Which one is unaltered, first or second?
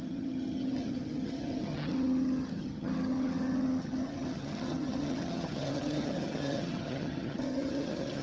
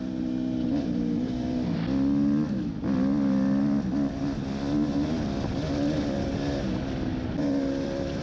second